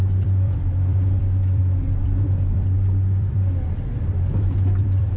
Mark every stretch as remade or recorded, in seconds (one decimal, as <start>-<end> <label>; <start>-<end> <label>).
0.0-5.2 remade

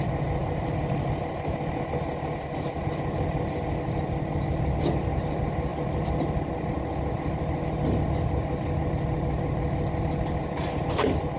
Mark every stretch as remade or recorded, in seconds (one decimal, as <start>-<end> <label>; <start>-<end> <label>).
0.0-11.4 recorded

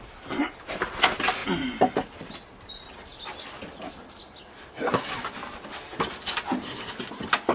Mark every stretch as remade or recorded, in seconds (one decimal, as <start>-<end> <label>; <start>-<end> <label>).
0.0-7.5 recorded

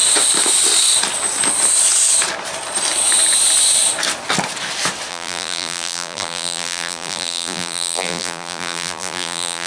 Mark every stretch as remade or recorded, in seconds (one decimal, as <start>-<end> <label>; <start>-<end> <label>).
0.0-5.1 recorded; 5.1-9.7 remade